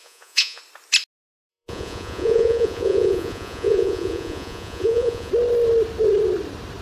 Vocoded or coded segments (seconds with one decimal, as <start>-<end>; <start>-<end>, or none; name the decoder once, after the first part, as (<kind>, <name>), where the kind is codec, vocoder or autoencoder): 0.0-0.6 (vocoder, Vocos); 1.5-5.3